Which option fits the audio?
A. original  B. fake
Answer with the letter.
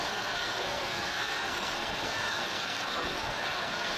B